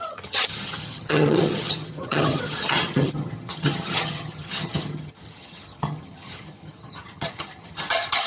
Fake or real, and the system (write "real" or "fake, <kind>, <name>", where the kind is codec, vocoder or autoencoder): fake, vocoder, HiFi-GAN